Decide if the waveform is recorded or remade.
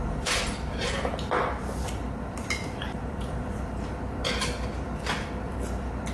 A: remade